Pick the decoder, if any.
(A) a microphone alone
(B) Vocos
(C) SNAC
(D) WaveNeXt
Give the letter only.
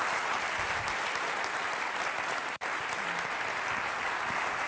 A